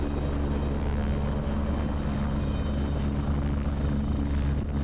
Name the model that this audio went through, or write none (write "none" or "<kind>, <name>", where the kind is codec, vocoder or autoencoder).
none